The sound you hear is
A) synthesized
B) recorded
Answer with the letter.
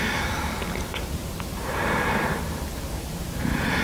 A